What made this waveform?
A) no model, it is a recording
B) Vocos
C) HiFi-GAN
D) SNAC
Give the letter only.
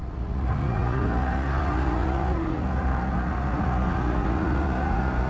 B